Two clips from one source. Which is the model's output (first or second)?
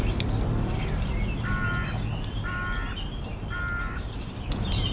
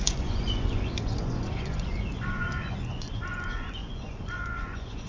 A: second